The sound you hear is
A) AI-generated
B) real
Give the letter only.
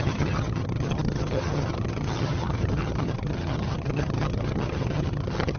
A